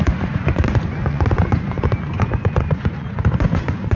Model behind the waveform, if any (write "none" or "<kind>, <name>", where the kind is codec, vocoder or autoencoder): vocoder, Vocos